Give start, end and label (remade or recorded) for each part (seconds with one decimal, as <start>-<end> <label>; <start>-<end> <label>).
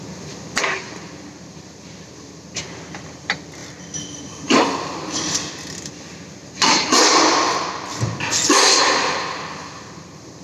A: 0.0-6.4 recorded; 6.4-7.0 remade; 7.0-10.4 recorded